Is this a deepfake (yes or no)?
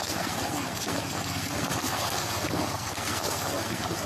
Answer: yes